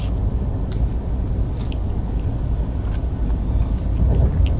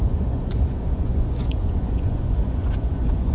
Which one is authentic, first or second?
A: first